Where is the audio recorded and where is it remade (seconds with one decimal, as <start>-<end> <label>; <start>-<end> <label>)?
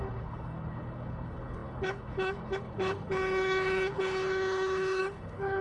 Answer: 0.0-5.6 remade